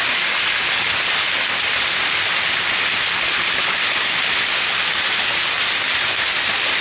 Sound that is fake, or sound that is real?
real